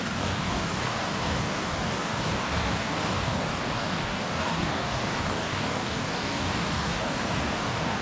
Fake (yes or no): yes